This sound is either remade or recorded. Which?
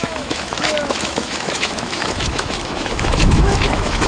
remade